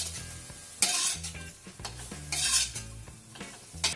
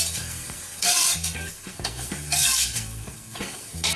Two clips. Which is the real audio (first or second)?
first